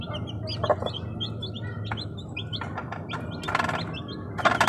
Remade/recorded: recorded